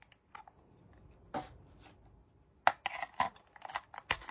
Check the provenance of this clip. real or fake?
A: real